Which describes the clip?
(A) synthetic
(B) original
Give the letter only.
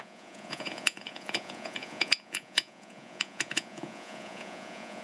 A